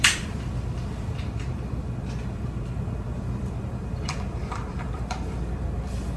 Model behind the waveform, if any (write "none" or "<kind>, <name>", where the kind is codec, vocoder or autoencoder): vocoder, BigVGAN v2